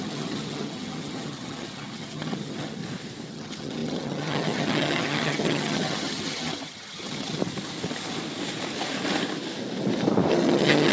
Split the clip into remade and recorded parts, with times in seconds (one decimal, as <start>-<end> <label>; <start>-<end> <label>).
0.0-2.8 remade; 2.8-3.3 recorded; 3.3-7.4 remade; 7.4-10.3 recorded; 10.3-10.9 remade